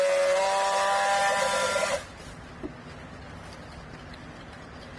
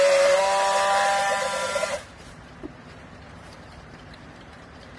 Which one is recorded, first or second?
first